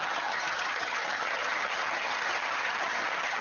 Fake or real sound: fake